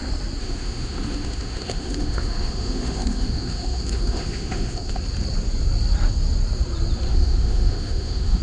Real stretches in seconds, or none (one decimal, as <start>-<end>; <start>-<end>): 0.0-0.4; 5.0-7.1